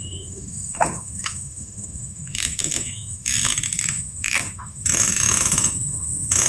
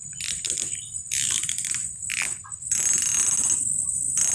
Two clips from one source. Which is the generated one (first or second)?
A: first